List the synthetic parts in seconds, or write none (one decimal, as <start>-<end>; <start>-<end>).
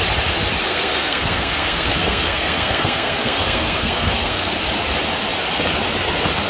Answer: 0.7-4.5